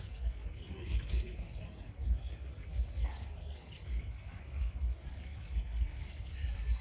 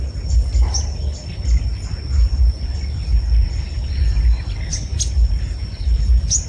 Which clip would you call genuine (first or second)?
second